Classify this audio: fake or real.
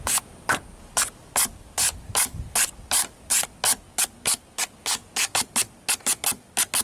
real